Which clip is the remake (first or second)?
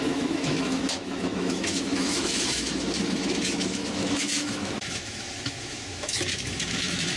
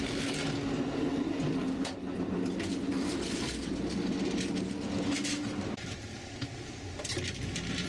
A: first